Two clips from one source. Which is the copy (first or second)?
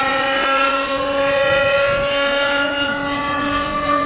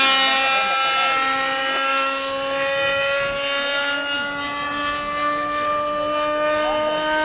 first